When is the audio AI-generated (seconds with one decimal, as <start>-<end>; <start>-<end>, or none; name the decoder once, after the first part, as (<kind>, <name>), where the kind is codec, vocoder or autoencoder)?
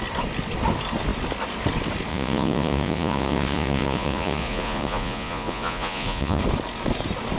2.1-6.4 (vocoder, Vocos)